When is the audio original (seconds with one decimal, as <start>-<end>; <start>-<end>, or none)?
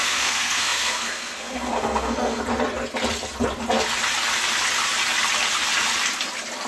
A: 2.4-6.7